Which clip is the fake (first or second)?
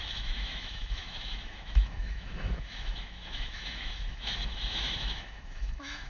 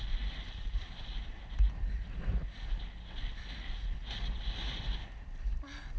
first